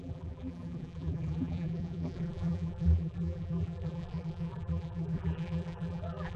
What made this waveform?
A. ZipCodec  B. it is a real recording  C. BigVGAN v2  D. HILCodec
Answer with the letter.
C